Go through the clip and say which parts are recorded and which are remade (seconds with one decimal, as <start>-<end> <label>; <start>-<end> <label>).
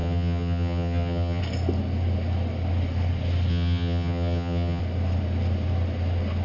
0.0-1.4 remade; 1.4-3.5 recorded; 3.5-4.8 remade; 4.8-6.4 recorded